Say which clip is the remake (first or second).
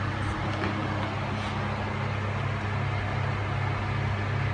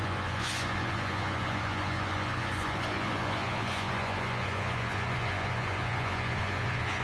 second